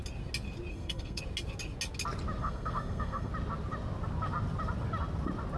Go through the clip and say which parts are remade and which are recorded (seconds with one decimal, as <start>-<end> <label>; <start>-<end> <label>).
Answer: 0.0-0.7 recorded; 0.7-1.2 remade; 1.2-2.4 recorded; 2.4-3.3 remade; 3.3-5.6 recorded